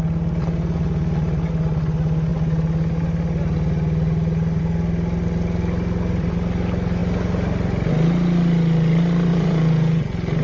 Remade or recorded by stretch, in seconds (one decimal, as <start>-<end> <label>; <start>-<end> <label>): 0.0-9.3 recorded; 9.3-10.0 remade; 10.0-10.4 recorded